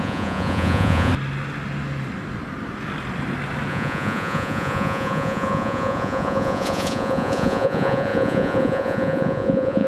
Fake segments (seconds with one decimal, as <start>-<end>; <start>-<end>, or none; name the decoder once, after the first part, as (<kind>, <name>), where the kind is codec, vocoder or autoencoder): 0.0-1.1 (vocoder, Vocos); 3.7-9.9